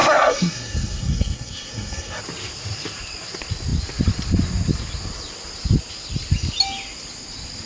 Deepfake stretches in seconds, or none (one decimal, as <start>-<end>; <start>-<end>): 0.0-2.2